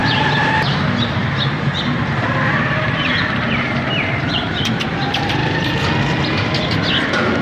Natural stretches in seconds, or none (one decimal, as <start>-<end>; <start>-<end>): 0.0-1.2; 4.9-7.4